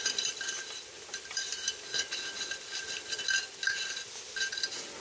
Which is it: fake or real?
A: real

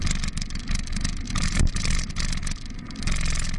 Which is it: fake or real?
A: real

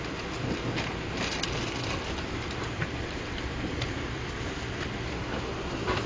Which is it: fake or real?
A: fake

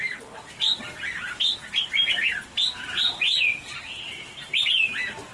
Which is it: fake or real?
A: fake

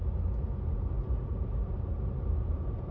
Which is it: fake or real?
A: real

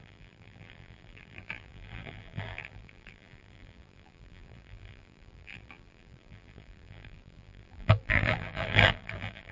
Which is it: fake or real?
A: fake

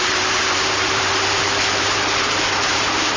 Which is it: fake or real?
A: fake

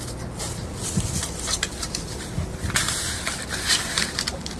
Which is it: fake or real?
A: fake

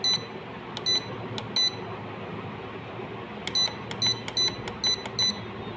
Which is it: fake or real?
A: real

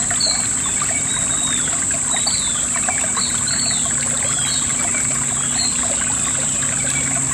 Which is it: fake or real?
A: real